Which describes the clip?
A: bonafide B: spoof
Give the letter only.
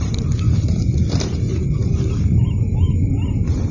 B